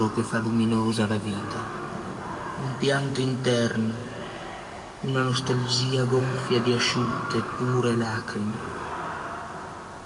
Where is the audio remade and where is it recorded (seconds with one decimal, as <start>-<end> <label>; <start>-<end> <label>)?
0.0-8.9 remade; 8.9-10.1 recorded